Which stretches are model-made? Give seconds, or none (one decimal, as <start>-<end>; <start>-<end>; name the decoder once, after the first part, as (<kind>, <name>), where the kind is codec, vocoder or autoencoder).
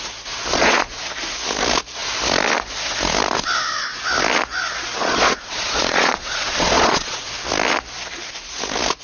0.5-1.0 (vocoder, Vocos); 5.0-7.3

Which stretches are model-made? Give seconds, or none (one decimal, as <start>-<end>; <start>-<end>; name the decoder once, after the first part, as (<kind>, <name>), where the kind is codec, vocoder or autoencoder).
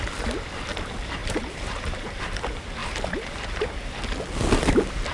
1.2-2.2 (vocoder, BigVGAN v2); 2.8-4.0